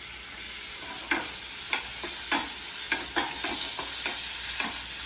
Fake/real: real